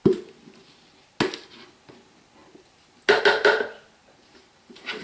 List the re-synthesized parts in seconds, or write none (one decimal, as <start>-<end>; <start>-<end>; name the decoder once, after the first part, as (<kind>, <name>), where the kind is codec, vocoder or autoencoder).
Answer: 4.0-5.0 (vocoder, BigVGAN v2)